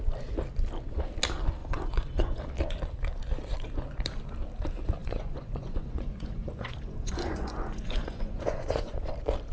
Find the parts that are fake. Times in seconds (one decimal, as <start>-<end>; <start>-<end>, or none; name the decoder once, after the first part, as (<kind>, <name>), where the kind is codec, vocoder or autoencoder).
1.6-2.4 (vocoder, Vocos); 5.0-9.1